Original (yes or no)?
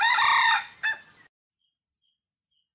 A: yes